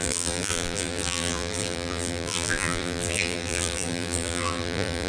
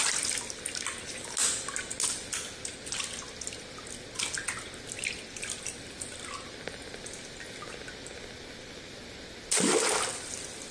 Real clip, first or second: second